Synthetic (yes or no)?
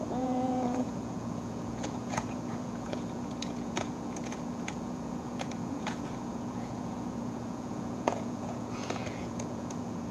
yes